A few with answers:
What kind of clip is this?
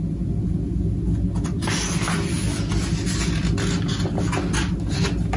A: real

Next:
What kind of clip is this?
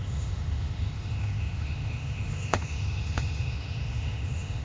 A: fake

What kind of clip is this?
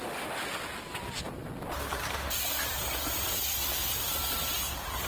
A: real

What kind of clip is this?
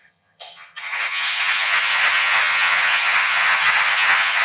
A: fake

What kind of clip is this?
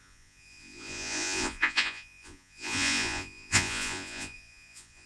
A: fake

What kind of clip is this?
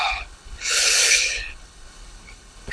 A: fake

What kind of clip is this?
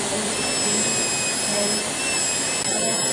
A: real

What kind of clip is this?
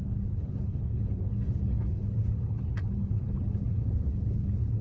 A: fake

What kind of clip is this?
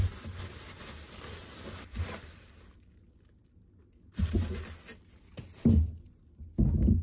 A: real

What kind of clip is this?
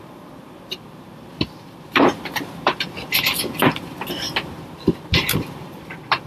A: fake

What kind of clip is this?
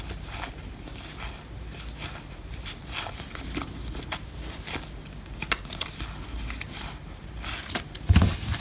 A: real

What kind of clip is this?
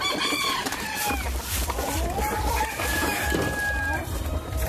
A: fake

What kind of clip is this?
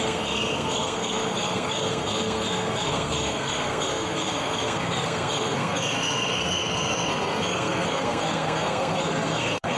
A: fake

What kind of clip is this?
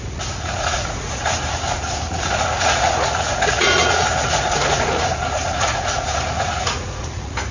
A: fake